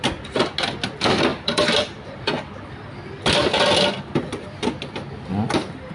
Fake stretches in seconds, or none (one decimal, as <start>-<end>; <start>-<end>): 1.3-2.5